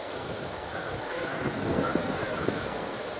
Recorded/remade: remade